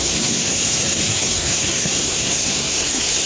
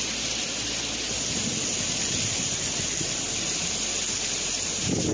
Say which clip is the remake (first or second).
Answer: first